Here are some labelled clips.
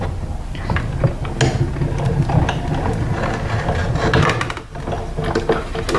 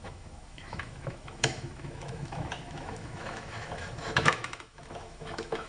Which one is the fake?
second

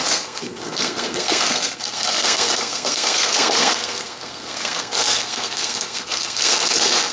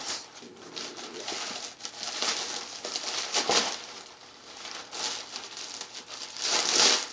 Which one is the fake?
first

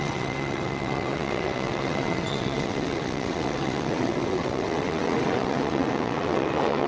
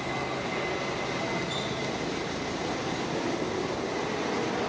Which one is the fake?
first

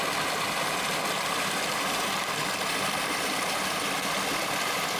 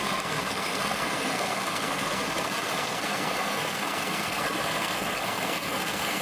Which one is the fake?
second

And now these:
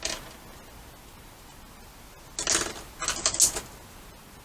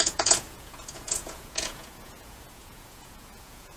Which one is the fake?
second